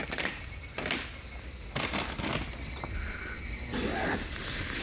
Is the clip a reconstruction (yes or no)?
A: no